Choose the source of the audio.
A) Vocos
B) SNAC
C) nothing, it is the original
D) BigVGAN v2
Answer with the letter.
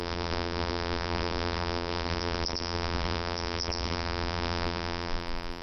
D